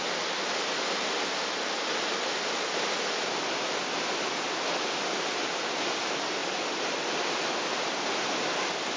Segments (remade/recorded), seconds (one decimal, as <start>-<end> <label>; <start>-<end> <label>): 0.0-9.0 recorded